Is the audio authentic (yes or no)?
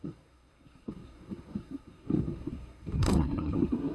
no